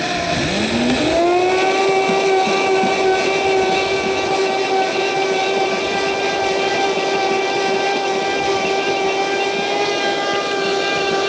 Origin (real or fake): real